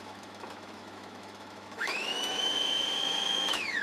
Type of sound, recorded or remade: remade